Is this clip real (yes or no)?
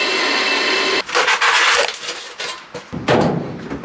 yes